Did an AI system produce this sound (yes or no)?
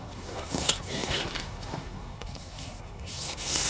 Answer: yes